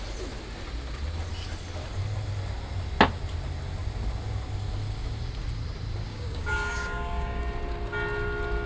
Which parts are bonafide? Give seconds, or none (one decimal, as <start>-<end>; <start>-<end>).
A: 0.0-6.1; 7.4-8.7

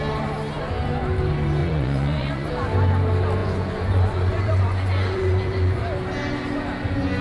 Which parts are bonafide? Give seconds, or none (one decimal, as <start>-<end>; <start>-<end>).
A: 0.0-1.6; 2.5-3.4; 5.8-7.2

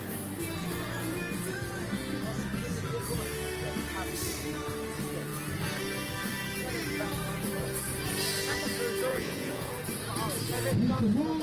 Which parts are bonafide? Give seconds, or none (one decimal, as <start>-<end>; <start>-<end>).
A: 0.0-9.1; 9.7-11.4

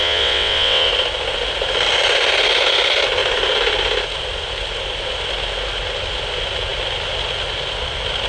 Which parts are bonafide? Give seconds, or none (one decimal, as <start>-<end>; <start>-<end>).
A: 0.9-8.3

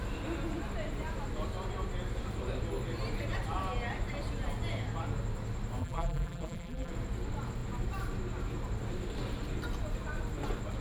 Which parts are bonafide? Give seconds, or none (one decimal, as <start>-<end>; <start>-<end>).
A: 0.0-5.8; 6.9-10.8

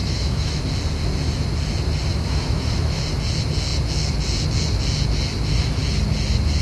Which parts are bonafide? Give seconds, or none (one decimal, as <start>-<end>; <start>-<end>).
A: 0.6-2.1; 3.0-6.6

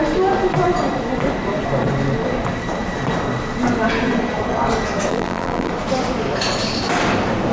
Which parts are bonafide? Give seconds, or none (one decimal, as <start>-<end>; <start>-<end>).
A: 0.0-5.1; 5.7-7.5